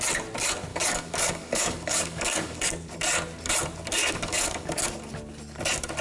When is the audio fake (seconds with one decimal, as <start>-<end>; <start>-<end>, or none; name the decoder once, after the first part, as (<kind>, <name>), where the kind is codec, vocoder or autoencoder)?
0.7-2.7 (codec, DAC); 4.0-4.8